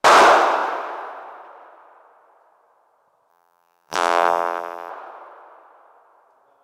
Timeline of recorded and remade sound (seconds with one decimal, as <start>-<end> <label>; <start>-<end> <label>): 0.0-3.3 recorded; 3.3-4.9 remade; 4.9-6.6 recorded